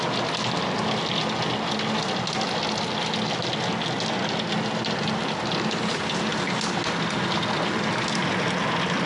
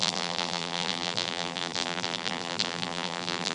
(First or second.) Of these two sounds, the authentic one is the first